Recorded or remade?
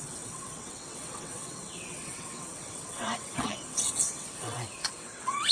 remade